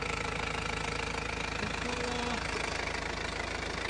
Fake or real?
real